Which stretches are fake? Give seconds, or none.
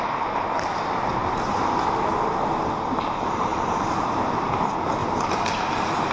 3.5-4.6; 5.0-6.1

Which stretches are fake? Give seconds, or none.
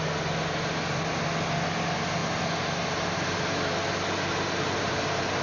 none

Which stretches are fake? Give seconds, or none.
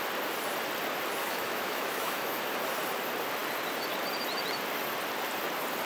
1.2-2.4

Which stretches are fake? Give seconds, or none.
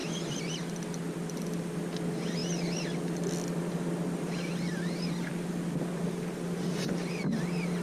0.0-0.6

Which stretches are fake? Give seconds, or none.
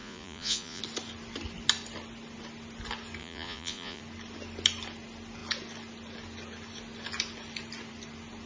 0.0-0.8; 3.2-4.0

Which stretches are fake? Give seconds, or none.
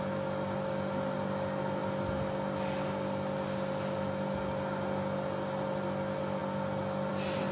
none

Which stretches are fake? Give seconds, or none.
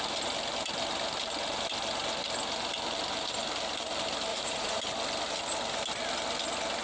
4.3-4.8